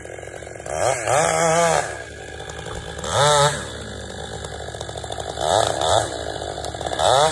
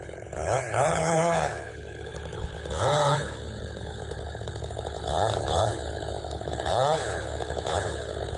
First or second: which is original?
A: first